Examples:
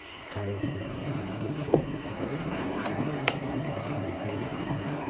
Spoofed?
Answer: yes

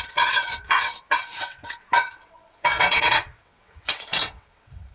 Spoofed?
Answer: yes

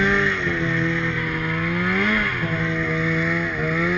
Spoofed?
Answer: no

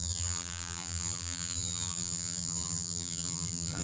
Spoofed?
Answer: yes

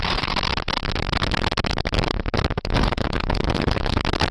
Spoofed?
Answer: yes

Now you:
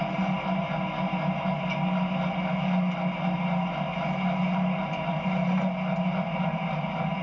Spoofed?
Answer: no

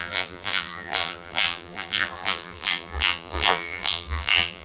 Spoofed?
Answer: yes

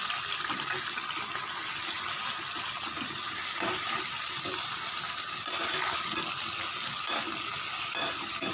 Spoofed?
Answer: no